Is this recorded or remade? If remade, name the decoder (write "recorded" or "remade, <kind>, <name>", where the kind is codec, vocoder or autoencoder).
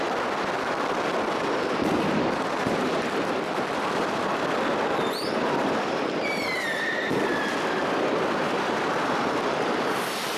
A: remade, vocoder, BigVGAN v2